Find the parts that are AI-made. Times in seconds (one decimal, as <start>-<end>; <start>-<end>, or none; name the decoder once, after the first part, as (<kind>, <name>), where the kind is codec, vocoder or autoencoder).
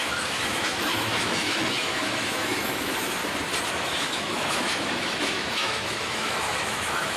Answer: 0.0-3.2 (autoencoder, DAC-VAE); 3.7-7.2